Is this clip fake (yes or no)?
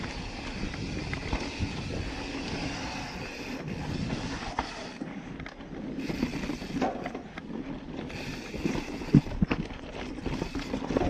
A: no